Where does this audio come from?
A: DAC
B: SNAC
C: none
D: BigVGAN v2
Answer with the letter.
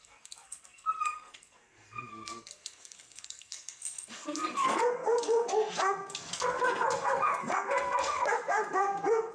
B